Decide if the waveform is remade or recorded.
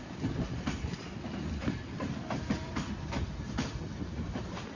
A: remade